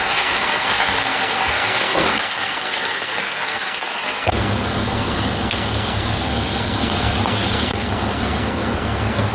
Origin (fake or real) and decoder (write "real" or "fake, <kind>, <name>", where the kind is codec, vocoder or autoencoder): fake, codec, SNAC